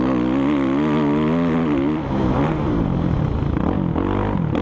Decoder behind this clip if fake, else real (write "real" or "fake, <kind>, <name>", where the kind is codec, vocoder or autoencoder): real